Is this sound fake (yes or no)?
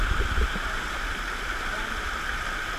no